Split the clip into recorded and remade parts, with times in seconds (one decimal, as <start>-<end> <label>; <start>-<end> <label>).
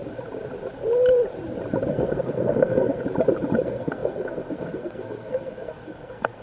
0.0-1.9 recorded; 1.9-3.0 remade; 3.0-3.6 recorded; 3.6-6.4 remade